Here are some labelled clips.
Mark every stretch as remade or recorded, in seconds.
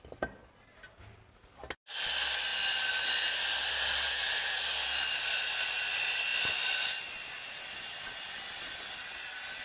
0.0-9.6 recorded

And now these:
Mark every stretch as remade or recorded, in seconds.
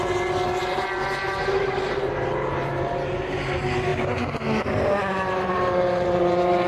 0.0-0.6 recorded; 0.6-3.5 remade; 3.5-5.1 recorded; 5.1-6.7 remade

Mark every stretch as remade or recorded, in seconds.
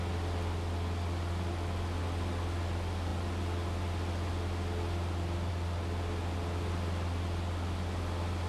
0.0-8.5 recorded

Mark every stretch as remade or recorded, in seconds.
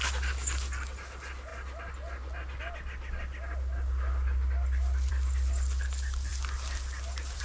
0.0-7.4 recorded